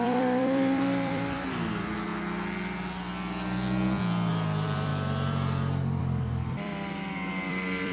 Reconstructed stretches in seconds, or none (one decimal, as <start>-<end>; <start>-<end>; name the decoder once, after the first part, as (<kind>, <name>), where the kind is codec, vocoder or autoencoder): 0.0-2.1 (vocoder, BigVGAN v2); 4.3-6.7; 7.5-7.9